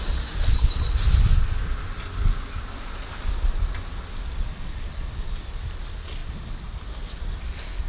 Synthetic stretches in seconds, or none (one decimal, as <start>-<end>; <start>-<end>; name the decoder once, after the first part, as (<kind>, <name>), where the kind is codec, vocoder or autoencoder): none